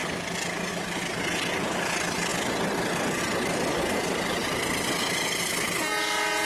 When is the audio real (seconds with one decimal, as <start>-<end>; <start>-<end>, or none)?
0.0-6.5